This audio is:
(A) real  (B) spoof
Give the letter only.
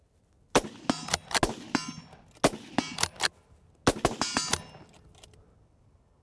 A